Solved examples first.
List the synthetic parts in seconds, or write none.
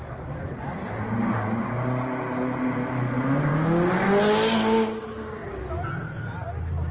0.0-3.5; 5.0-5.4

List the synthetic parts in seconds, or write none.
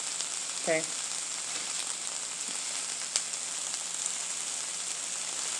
none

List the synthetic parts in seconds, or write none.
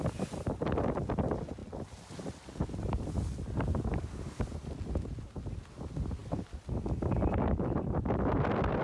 6.2-7.9